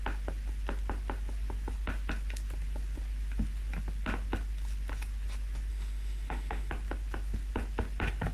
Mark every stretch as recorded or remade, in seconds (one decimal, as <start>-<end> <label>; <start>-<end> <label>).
0.0-5.7 recorded; 5.7-6.7 remade; 6.7-8.3 recorded